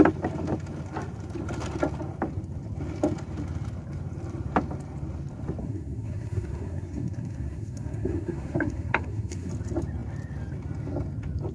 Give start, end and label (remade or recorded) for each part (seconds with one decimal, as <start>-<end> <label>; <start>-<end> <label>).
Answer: 0.0-5.6 recorded; 5.6-9.5 remade; 9.5-11.5 recorded